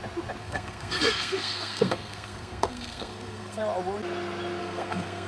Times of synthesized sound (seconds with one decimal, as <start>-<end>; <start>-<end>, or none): 0.4-3.6; 4.6-5.3